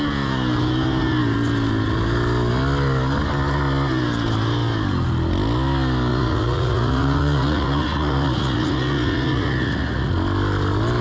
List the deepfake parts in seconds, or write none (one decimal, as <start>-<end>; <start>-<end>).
6.1-10.1